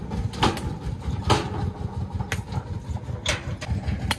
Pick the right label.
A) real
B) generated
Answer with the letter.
A